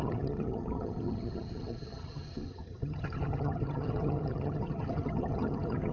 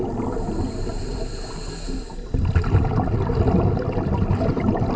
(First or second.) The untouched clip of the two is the second